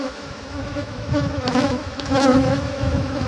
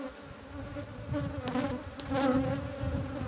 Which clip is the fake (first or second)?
first